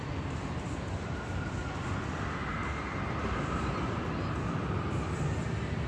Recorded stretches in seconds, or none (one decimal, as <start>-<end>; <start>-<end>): 0.0-5.9